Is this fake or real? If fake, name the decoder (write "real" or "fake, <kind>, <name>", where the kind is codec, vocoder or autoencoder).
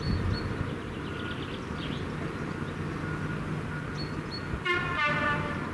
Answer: real